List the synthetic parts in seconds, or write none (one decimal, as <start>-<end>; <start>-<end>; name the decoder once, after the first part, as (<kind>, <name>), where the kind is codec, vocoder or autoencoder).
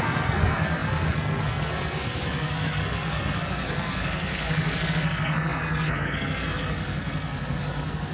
0.0-8.1 (codec, SNAC)